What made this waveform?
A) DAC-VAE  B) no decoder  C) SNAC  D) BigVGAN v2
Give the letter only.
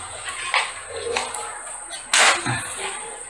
B